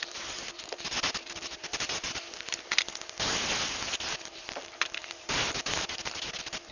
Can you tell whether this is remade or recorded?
remade